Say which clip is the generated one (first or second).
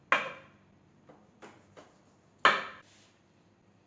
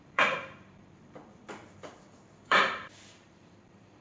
second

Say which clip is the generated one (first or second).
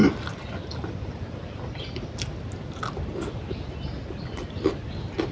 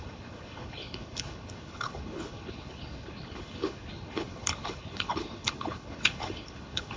second